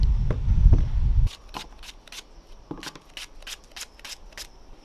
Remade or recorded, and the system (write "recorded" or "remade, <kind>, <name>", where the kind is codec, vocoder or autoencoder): recorded